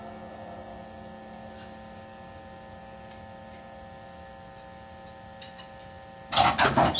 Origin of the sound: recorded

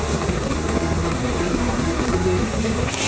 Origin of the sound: remade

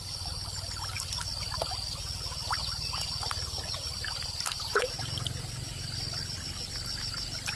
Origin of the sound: recorded